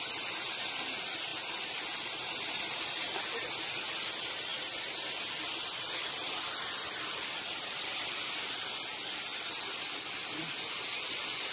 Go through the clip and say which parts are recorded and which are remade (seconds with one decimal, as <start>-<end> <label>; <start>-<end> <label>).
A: 0.0-1.3 recorded; 1.3-3.2 remade; 3.2-4.5 recorded; 4.5-6.4 remade; 6.4-9.3 recorded; 9.3-10.8 remade; 10.8-11.5 recorded